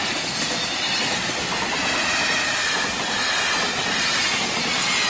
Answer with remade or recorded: recorded